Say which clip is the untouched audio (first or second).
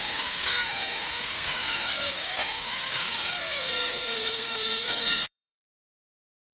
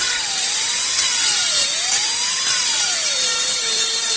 second